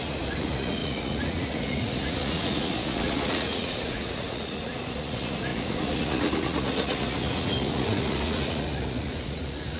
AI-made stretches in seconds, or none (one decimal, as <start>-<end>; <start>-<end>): 0.0-9.8